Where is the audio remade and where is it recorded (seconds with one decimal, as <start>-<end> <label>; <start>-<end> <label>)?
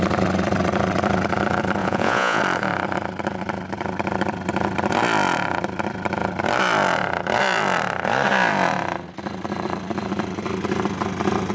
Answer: 0.0-1.8 recorded; 1.8-2.4 remade; 2.4-11.5 recorded